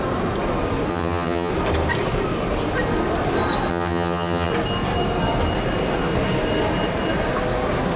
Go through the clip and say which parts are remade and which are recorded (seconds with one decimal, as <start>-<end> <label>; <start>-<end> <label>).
0.0-0.9 recorded; 0.9-1.5 remade; 1.5-3.7 recorded; 3.7-4.5 remade; 4.5-8.0 recorded